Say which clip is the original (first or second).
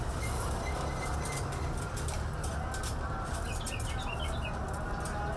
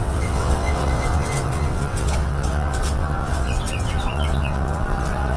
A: first